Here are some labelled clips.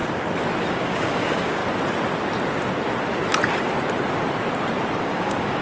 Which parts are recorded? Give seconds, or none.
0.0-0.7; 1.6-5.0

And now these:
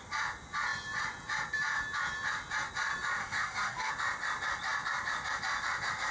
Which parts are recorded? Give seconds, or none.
0.0-3.2; 3.9-6.1

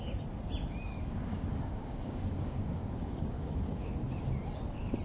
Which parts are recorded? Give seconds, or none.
0.0-0.9; 3.9-5.0

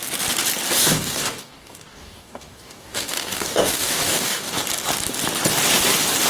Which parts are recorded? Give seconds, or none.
0.0-0.8; 4.6-6.3

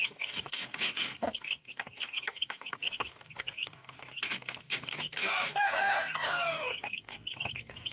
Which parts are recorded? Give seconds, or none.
none

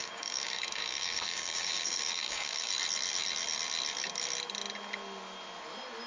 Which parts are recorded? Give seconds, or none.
2.7-6.1

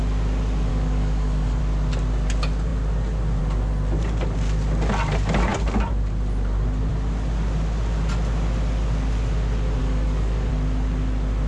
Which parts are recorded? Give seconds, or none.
0.0-0.7; 1.6-9.8; 10.5-11.5